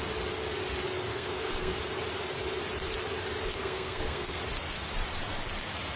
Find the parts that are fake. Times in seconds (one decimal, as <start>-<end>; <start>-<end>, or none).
1.1-1.8; 3.5-4.4